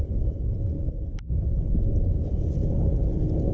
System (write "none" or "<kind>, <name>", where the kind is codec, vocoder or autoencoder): none